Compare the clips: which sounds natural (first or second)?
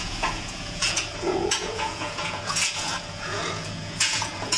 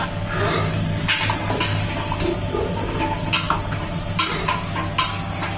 second